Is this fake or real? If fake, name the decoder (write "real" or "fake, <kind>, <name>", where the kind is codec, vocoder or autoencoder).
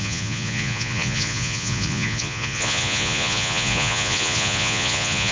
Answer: fake, vocoder, Vocos